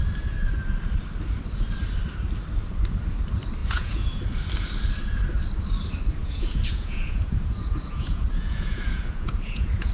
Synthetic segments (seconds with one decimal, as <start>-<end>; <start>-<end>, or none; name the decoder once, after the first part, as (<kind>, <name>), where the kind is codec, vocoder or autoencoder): 3.6-4.2 (vocoder, Vocos); 6.2-9.9